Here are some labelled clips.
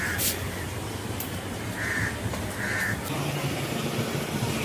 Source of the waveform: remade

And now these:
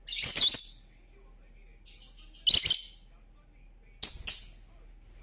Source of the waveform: recorded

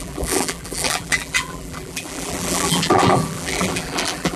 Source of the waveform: remade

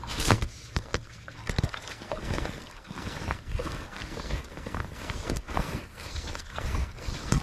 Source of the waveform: remade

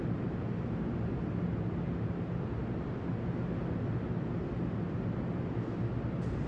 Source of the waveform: recorded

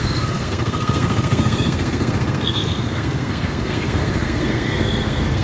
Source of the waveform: remade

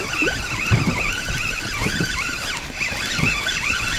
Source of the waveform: recorded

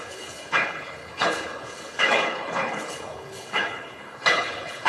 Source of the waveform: remade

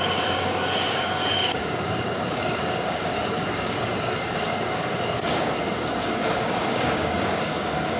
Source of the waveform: remade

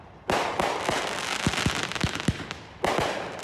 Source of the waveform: recorded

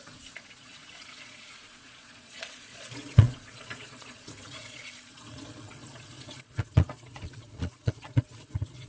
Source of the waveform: remade